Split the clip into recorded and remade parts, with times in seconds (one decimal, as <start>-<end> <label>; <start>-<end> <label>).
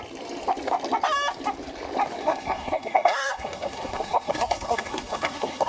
0.0-2.2 recorded; 2.2-5.7 remade